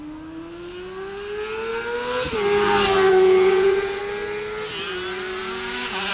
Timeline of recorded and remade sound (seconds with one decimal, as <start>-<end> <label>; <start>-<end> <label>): 0.0-3.1 recorded; 3.1-4.0 remade; 4.0-5.4 recorded; 5.4-6.1 remade